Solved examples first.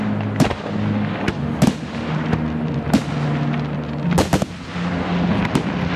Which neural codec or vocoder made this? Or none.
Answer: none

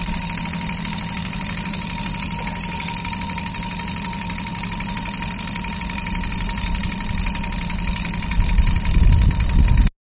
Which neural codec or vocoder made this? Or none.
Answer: none